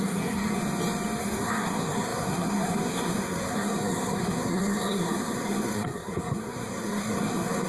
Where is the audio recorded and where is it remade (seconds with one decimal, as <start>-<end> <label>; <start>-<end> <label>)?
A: 0.0-0.6 remade; 0.6-1.2 recorded; 1.2-7.7 remade